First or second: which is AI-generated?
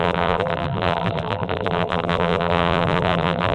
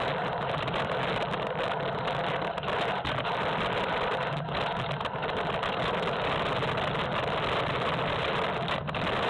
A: first